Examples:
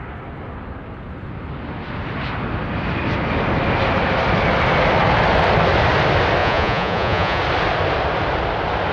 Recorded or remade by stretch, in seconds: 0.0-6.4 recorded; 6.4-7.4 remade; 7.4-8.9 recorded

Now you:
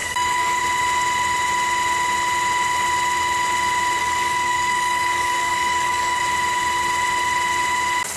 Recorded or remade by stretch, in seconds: 0.0-0.6 remade; 0.6-4.0 recorded; 4.0-6.2 remade; 6.2-8.2 recorded

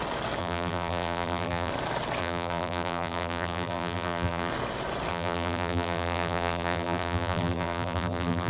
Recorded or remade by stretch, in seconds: 0.0-0.4 recorded; 0.4-1.7 remade; 1.7-2.2 recorded; 2.2-4.5 remade; 4.5-5.1 recorded; 5.1-8.5 remade

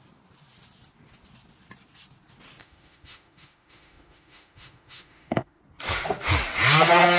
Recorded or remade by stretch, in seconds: 0.0-2.6 recorded; 2.6-5.6 remade; 5.6-7.2 recorded